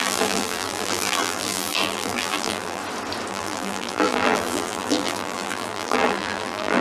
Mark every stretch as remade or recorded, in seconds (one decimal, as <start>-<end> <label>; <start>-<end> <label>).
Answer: 0.0-2.8 remade; 2.8-3.3 recorded; 3.3-6.8 remade